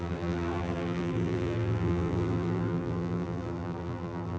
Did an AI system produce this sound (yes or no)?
yes